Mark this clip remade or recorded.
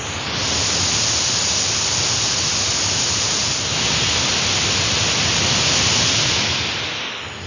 recorded